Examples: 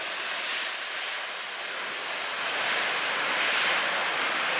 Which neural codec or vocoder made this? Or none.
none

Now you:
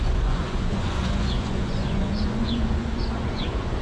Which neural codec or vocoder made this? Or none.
vocoder, Vocos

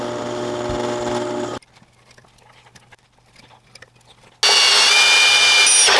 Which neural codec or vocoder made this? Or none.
none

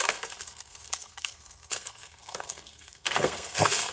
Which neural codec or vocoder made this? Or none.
codec, SNAC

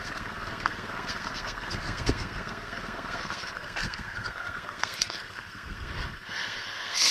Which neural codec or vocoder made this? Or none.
codec, SNAC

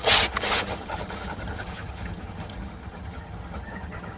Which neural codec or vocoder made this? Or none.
vocoder, HiFi-GAN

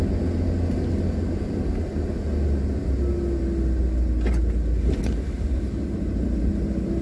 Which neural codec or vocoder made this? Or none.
none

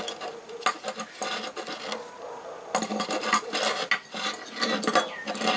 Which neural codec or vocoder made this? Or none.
none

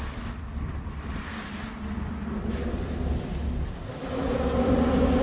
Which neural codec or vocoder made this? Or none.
none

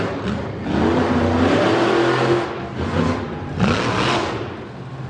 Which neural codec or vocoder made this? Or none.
none